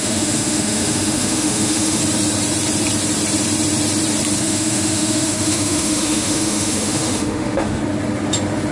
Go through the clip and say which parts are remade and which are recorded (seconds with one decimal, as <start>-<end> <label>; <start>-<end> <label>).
0.0-2.0 remade; 2.0-4.4 recorded; 4.4-7.8 remade; 7.8-8.7 recorded